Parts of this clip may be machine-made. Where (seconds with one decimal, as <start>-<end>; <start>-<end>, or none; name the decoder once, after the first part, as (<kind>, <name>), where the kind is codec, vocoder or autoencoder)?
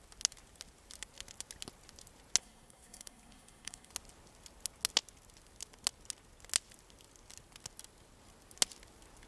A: 2.4-3.9 (codec, SNAC)